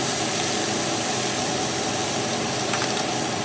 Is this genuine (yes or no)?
yes